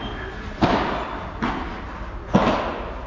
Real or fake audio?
real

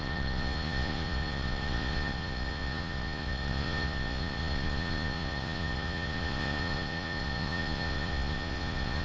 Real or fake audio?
fake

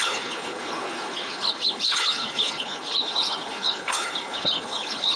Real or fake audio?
fake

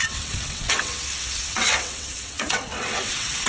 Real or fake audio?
fake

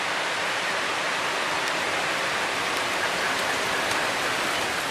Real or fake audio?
fake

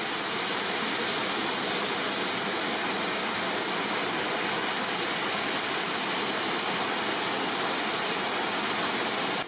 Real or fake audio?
real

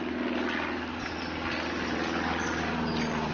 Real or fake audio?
real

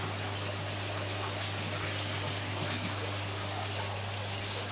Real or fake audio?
real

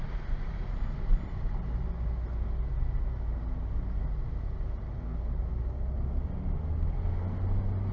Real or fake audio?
real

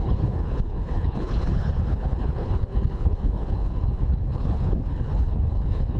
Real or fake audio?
fake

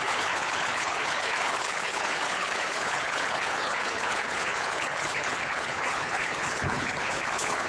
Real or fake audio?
fake